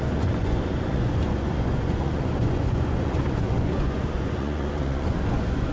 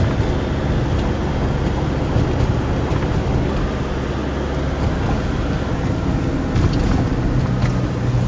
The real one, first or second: second